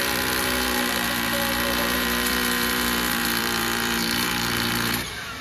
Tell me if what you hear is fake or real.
fake